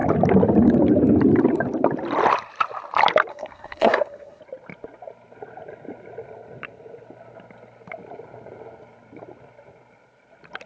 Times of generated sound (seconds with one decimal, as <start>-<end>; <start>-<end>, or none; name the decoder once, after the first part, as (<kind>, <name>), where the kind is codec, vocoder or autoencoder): 3.3-4.4 (codec, SNAC)